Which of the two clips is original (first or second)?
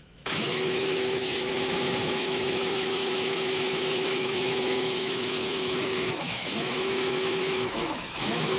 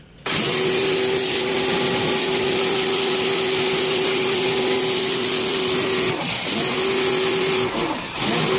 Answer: second